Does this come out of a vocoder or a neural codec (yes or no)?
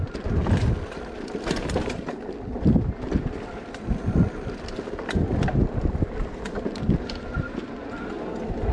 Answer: no